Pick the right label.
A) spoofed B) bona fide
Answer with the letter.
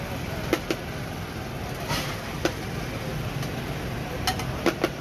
B